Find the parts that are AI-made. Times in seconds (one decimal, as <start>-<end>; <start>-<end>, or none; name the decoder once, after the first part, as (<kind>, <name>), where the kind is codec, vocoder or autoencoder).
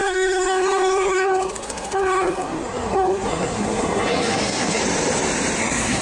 0.0-4.8 (codec, SNAC); 5.6-6.0